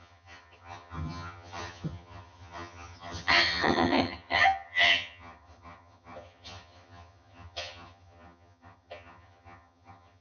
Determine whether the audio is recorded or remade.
remade